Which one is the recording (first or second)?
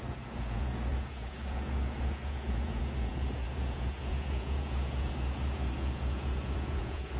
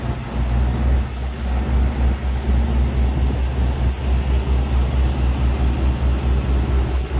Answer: second